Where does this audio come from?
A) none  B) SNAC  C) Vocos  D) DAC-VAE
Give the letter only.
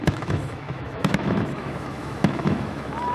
D